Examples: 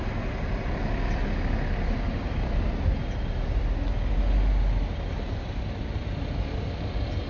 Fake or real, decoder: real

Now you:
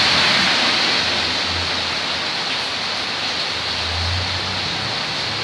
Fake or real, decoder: fake, vocoder, BigVGAN v2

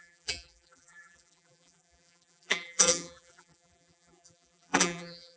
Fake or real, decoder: fake, vocoder, BigVGAN v2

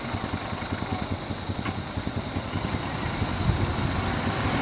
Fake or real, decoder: real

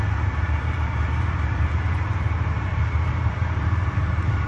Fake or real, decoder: fake, vocoder, BigVGAN v2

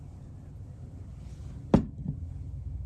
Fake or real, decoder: real